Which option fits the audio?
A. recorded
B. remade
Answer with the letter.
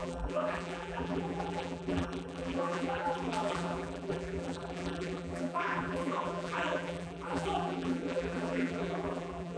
B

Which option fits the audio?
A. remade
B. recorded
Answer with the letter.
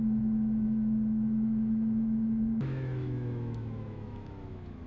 A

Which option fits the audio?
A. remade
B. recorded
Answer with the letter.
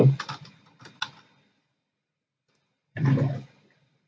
B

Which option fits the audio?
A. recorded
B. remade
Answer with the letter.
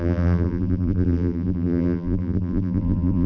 B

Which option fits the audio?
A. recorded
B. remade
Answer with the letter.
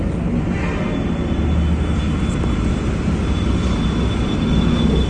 A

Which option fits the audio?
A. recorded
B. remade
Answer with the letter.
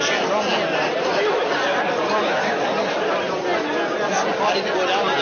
A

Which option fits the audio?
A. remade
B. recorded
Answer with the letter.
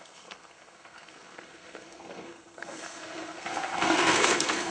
A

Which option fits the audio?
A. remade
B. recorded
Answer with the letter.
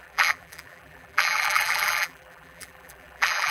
A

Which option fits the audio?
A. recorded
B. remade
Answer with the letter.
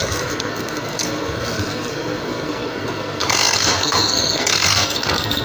B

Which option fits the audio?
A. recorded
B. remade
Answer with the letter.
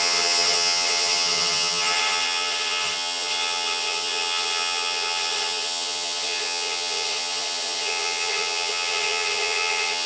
B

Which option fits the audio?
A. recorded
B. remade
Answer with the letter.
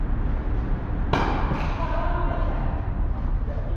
A